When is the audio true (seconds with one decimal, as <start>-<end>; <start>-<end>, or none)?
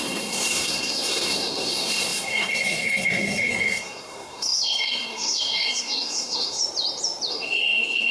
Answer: 6.6-7.3